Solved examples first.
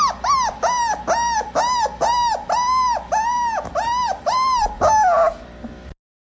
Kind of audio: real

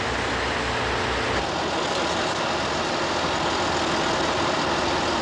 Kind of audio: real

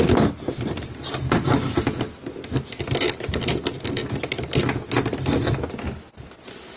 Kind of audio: real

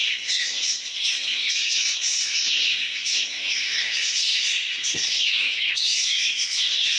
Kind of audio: fake